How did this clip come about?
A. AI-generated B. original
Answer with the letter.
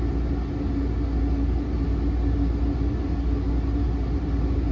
B